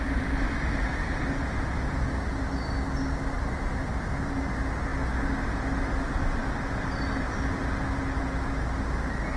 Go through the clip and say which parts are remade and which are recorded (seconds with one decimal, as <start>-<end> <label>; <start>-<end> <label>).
0.0-3.9 recorded; 3.9-4.5 remade; 4.5-9.4 recorded